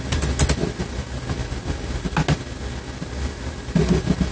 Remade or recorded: recorded